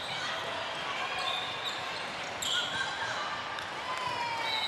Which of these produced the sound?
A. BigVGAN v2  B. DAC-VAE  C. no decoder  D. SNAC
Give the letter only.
C